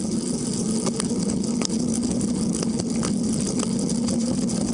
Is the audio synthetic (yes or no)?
no